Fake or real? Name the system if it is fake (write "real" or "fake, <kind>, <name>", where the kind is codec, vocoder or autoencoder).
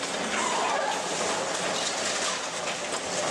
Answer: real